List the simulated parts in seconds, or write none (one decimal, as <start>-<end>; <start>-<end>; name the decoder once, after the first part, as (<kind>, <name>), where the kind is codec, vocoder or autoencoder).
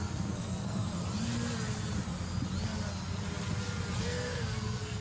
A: 0.0-1.0 (codec, SNAC); 4.0-5.0